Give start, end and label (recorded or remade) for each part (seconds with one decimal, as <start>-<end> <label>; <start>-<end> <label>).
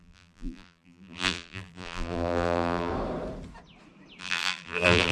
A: 0.0-2.9 remade; 2.9-4.2 recorded; 4.2-5.1 remade